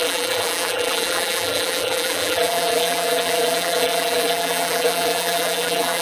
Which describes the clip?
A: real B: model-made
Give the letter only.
B